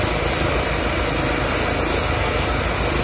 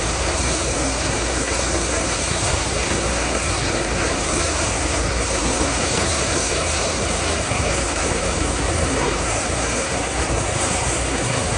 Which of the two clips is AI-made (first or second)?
second